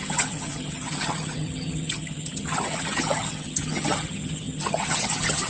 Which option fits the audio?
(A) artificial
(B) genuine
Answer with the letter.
A